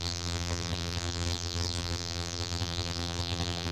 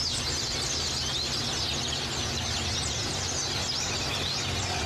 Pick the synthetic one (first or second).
first